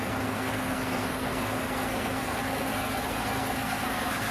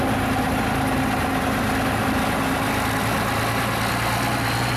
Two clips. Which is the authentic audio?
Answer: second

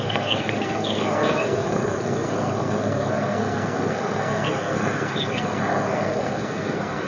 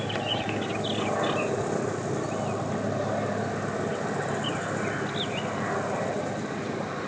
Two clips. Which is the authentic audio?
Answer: second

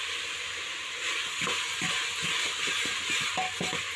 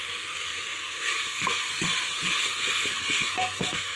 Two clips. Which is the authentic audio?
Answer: first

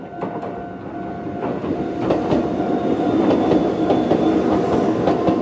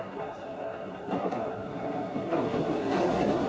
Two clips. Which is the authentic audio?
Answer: first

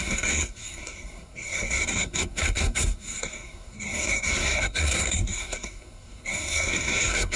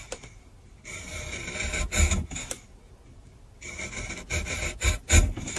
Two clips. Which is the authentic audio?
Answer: second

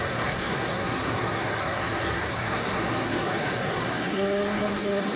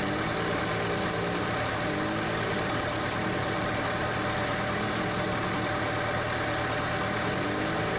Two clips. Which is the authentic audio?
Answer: second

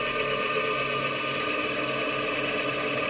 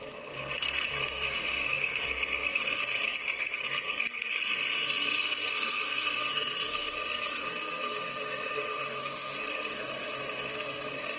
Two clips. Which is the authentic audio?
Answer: first